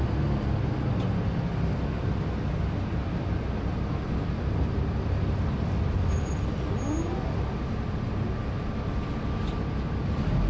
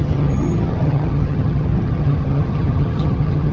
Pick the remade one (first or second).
second